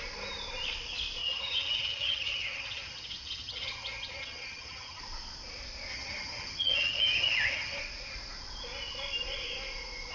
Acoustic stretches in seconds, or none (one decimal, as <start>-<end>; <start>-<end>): 0.0-1.2; 5.0-5.9; 7.8-10.1